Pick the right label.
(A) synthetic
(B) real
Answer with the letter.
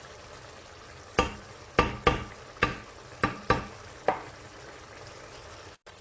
B